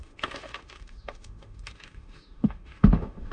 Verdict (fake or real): fake